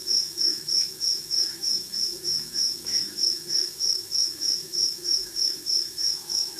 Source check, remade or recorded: remade